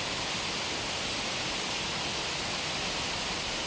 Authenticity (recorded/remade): recorded